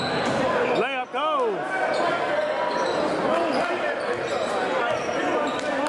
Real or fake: real